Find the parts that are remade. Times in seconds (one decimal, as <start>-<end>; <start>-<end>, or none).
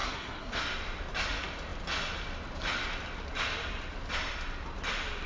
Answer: 0.0-0.6